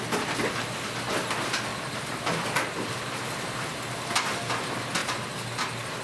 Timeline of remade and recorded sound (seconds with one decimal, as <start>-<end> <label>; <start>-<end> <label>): 0.0-1.7 recorded; 1.7-3.7 remade; 3.7-6.0 recorded